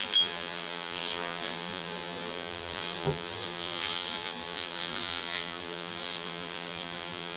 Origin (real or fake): fake